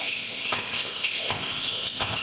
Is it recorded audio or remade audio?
remade